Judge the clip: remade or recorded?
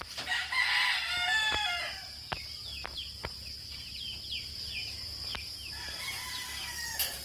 recorded